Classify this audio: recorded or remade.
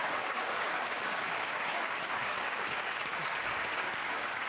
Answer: remade